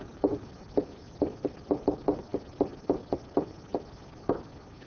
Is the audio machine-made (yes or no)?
no